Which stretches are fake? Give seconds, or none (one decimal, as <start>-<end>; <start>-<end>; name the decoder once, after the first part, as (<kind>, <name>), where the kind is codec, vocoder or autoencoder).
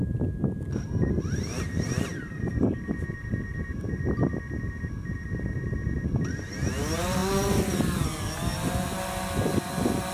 none